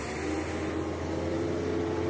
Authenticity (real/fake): real